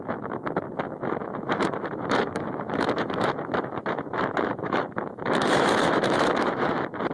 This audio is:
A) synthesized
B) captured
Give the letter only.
A